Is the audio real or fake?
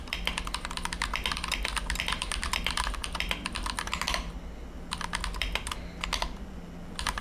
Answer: real